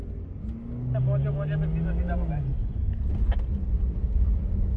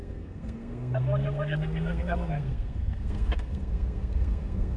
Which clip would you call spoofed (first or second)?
second